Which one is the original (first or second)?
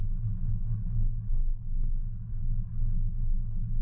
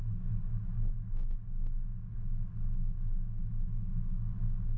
second